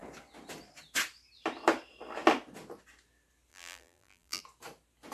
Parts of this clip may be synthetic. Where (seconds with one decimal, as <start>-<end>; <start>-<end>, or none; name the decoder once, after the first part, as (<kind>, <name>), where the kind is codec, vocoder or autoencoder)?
3.5-4.4 (vocoder, BigVGAN v2)

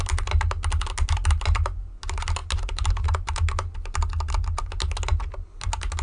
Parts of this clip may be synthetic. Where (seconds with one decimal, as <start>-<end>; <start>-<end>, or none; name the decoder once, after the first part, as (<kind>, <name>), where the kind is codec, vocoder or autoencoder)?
none

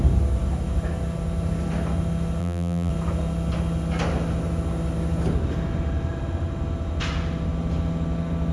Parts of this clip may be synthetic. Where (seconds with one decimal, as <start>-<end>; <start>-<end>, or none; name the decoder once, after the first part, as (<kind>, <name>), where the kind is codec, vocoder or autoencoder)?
2.4-2.9 (vocoder, BigVGAN v2)

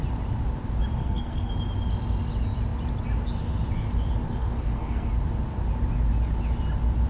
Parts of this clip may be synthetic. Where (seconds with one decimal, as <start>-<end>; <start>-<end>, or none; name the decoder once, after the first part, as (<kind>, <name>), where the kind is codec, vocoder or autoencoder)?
1.0-1.5 (codec, SNAC); 4.4-5.1

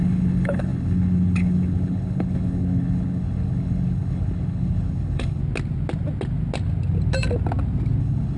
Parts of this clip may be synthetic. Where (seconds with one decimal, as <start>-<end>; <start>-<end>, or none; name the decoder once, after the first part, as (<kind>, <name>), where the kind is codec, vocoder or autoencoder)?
0.0-5.4 (codec, HILCodec); 8.0-8.4

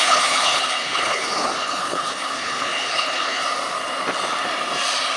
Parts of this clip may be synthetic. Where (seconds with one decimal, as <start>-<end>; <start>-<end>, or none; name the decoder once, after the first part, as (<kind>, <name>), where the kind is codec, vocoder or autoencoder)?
0.0-3.4 (codec, HILCodec)

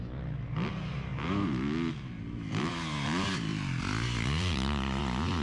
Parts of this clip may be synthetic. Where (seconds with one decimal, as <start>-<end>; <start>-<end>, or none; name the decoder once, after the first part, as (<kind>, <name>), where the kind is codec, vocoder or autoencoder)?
3.5-5.0 (vocoder, BigVGAN v2)